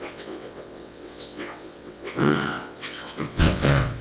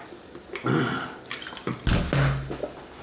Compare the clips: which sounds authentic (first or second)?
second